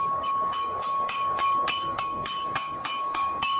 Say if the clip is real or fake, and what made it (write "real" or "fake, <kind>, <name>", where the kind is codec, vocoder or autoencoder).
fake, codec, DAC